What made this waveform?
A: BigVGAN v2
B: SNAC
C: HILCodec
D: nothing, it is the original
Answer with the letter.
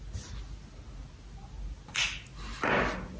D